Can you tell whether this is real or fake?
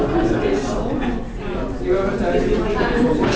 real